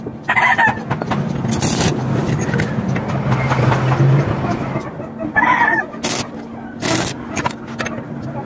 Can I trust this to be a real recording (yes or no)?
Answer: yes